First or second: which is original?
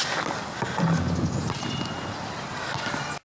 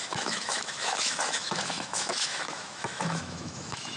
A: first